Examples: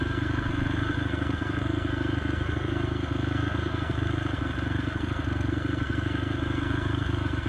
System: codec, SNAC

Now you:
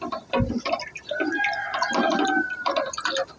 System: none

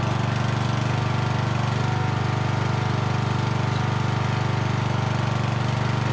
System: none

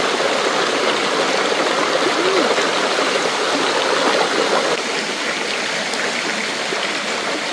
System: none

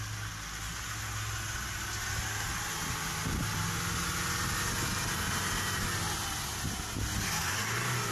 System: none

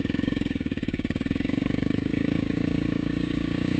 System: codec, DAC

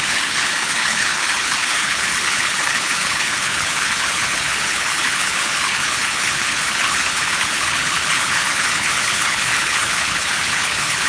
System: codec, HILCodec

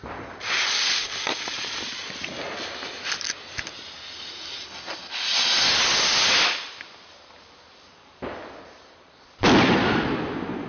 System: none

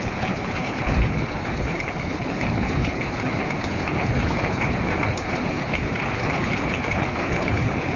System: codec, HILCodec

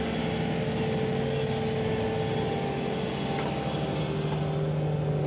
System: none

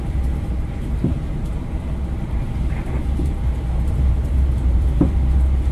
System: vocoder, BigVGAN v2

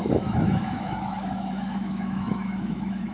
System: autoencoder, DAC-VAE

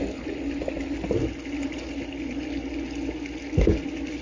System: none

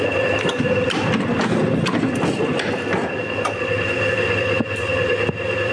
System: vocoder, BigVGAN v2